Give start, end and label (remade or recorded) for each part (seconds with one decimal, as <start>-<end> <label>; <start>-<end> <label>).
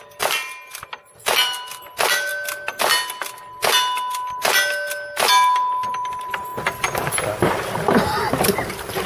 0.0-2.3 remade; 2.3-5.7 recorded; 5.7-9.1 remade